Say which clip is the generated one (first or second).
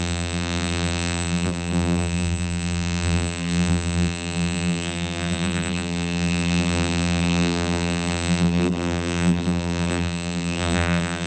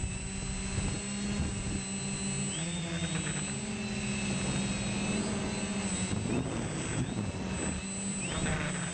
first